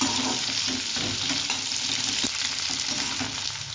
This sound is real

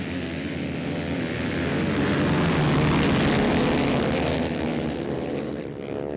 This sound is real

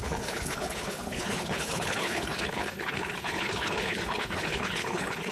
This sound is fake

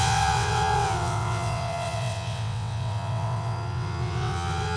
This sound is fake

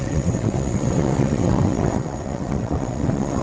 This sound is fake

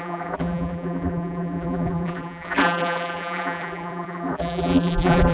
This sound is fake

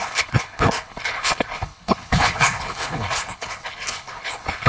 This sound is fake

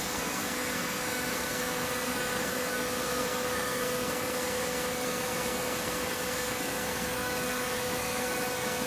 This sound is fake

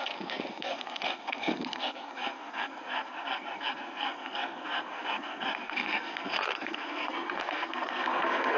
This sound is fake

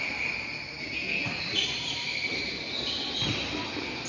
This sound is real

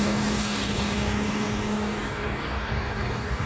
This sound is fake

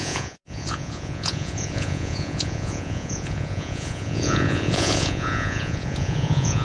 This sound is fake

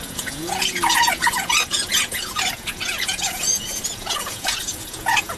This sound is fake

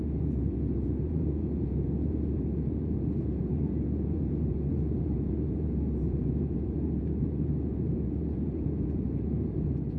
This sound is fake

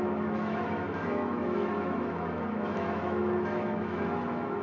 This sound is fake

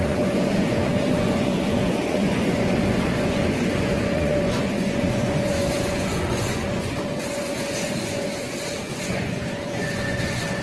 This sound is fake